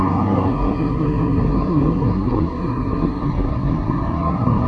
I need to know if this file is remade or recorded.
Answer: remade